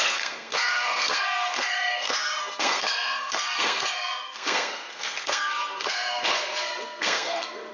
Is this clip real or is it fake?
fake